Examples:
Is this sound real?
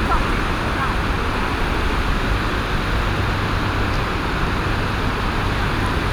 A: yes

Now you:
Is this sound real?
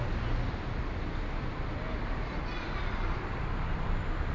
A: yes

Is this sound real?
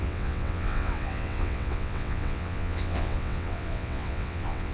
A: no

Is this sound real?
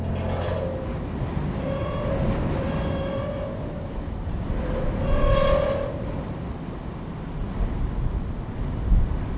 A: yes